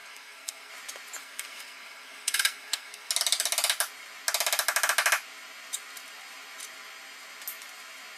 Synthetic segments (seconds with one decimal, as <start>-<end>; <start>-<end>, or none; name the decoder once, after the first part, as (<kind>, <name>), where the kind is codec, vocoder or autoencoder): 0.0-0.7 (codec, SNAC); 1.2-3.1